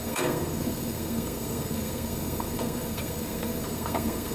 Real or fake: fake